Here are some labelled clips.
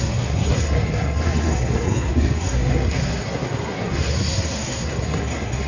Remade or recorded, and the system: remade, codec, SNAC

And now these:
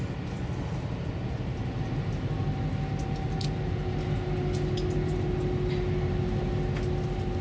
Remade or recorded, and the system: recorded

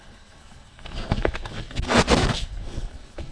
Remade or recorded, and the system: remade, codec, SNAC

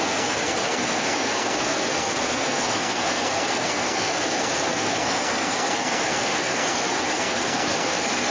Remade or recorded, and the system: remade, codec, SNAC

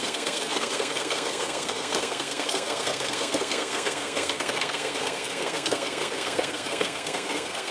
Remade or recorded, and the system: remade, codec, SNAC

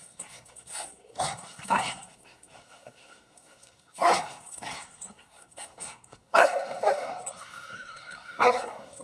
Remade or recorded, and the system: remade, codec, SNAC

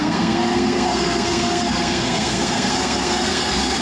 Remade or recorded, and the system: remade, codec, SNAC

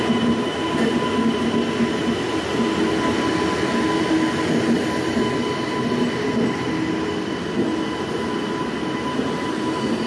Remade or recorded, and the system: recorded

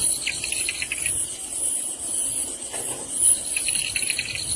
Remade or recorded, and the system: recorded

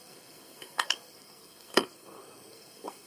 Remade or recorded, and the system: remade, codec, SNAC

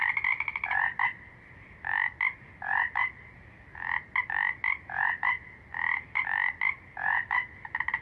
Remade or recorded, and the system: recorded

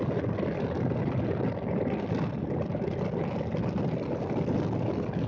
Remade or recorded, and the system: recorded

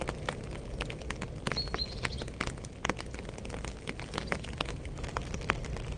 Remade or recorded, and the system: recorded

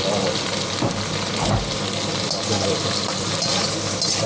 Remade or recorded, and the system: recorded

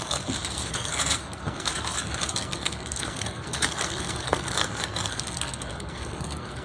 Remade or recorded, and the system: remade, codec, SNAC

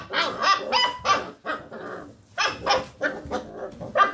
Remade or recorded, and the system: recorded